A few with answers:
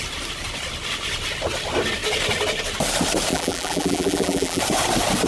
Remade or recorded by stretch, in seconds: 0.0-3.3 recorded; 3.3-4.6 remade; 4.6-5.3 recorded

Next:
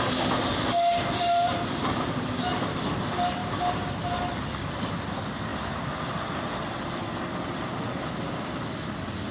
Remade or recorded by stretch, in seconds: 0.0-9.3 recorded

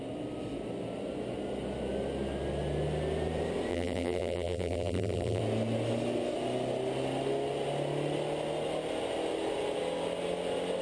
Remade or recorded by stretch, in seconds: 0.0-3.7 recorded; 3.7-5.4 remade; 5.4-10.8 recorded